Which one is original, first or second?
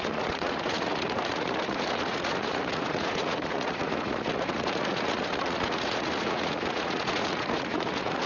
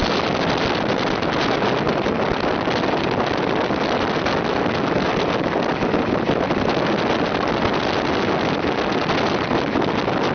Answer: second